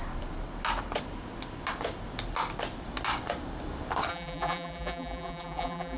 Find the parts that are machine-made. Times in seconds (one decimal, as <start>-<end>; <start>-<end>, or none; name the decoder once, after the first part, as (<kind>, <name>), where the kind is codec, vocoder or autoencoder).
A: 4.1-6.0 (vocoder, BigVGAN v2)